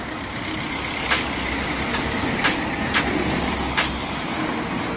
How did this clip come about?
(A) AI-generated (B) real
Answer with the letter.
B